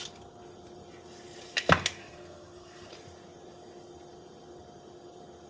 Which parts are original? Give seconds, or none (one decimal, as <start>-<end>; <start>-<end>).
0.0-2.0; 2.9-5.5